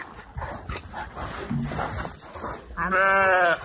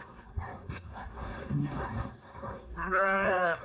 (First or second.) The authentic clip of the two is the first